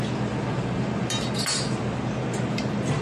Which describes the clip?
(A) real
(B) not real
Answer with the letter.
A